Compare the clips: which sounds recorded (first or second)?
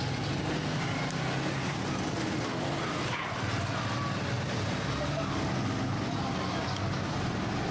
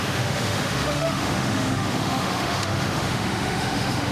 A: first